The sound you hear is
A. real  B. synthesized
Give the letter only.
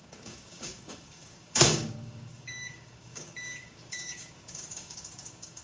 B